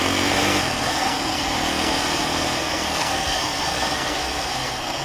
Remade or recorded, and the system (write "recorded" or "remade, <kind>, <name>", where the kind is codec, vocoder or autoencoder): remade, codec, SNAC